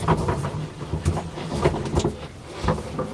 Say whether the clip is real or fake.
real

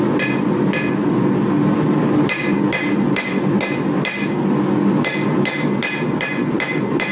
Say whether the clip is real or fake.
real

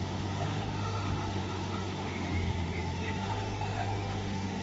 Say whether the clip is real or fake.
fake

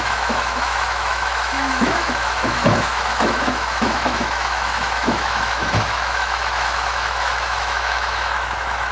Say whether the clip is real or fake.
fake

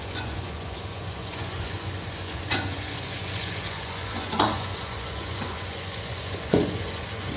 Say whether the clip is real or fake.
fake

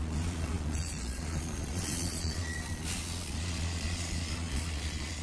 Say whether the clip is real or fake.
fake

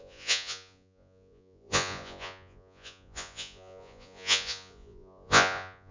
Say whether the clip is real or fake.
fake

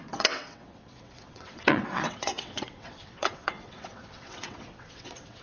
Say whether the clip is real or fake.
fake